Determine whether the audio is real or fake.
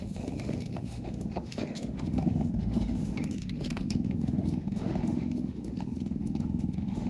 fake